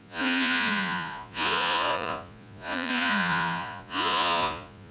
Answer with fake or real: fake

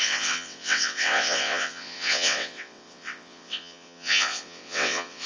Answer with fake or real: fake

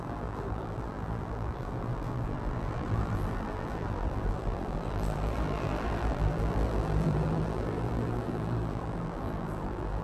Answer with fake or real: fake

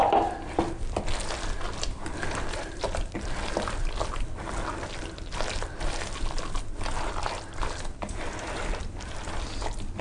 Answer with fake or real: real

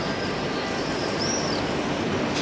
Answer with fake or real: real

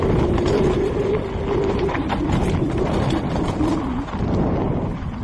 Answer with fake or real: real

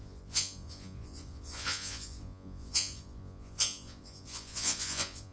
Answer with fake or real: fake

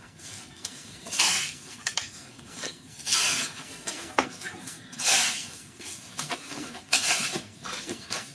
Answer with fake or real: fake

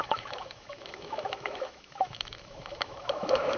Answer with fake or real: fake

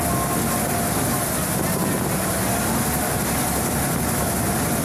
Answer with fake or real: real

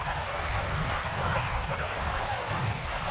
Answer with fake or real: fake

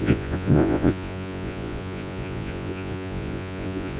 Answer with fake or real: fake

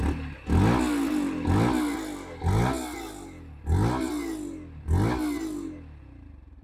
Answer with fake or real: real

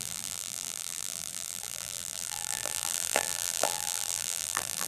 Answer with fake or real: fake